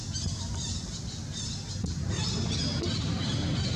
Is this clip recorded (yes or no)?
yes